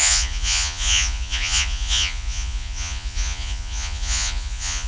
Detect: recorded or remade remade